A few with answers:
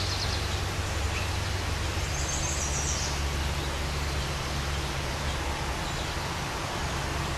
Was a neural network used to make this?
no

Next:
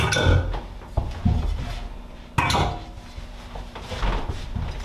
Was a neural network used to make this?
no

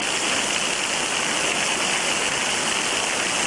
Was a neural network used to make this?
no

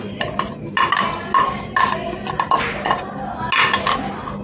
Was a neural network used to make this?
no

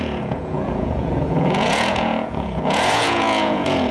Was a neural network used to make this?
yes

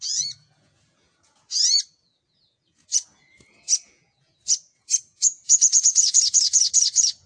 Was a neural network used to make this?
yes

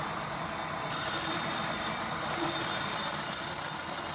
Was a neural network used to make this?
no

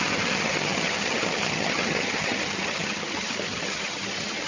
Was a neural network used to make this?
yes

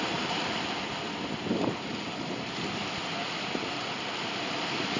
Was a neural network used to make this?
no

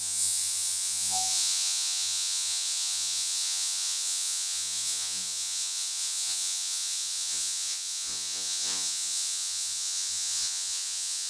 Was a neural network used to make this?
yes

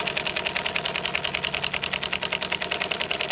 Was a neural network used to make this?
no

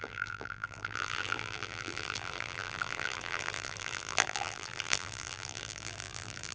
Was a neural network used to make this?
yes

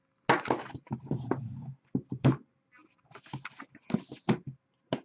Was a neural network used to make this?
no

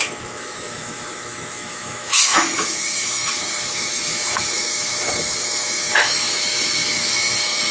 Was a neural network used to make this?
yes